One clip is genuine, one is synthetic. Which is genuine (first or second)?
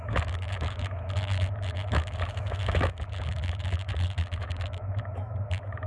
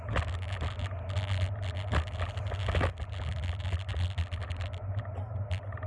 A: second